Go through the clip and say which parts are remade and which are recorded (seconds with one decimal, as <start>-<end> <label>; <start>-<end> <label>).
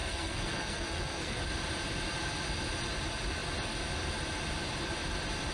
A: 0.0-1.4 remade; 1.4-5.5 recorded